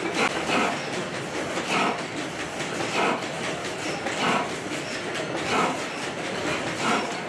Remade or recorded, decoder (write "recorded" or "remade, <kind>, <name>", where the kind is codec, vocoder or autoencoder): recorded